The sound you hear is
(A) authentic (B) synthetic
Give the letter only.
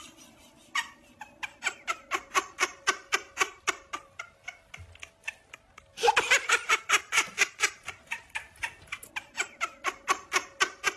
A